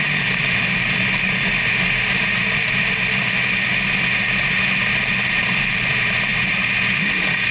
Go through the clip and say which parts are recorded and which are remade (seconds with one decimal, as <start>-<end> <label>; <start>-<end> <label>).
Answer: 0.0-1.5 remade; 1.5-5.1 recorded; 5.1-6.3 remade; 6.3-7.5 recorded